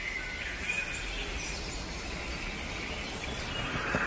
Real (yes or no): yes